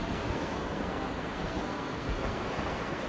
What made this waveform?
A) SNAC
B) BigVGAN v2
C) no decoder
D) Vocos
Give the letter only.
A